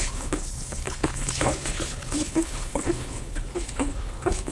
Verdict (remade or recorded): remade